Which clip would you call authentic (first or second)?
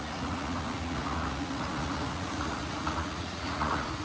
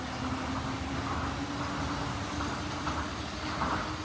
second